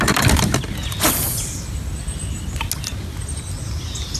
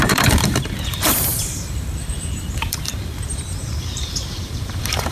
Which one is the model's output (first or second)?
second